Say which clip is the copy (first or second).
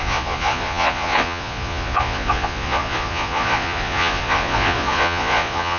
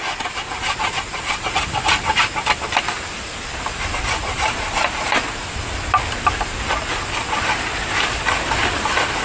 first